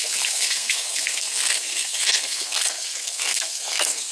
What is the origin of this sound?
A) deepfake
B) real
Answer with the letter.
A